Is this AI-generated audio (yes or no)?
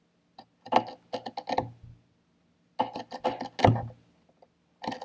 no